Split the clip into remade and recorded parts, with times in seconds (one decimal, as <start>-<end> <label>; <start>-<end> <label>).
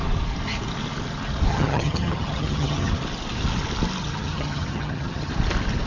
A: 0.0-1.5 recorded; 1.5-2.9 remade; 2.9-4.0 recorded; 4.0-5.3 remade; 5.3-5.9 recorded